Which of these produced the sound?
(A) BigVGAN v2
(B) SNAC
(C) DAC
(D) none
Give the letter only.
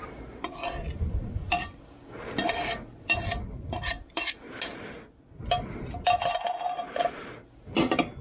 D